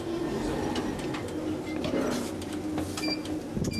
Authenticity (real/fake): real